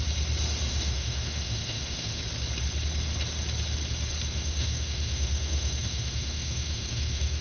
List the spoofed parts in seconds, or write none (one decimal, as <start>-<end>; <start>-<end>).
0.7-2.2; 4.3-7.4